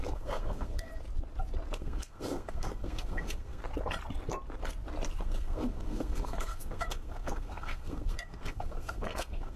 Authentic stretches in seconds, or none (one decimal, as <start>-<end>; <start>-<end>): 0.9-1.7; 3.6-5.2